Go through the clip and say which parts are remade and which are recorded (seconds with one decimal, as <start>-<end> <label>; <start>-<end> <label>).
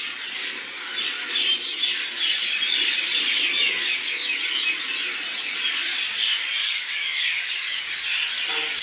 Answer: 0.0-6.6 recorded; 6.6-8.0 remade; 8.0-8.8 recorded